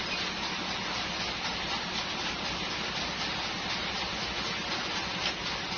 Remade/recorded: recorded